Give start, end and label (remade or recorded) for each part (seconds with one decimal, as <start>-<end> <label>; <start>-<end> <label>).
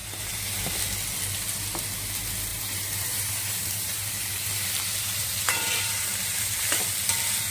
0.0-0.8 remade; 0.8-2.5 recorded; 2.5-6.8 remade; 6.8-7.5 recorded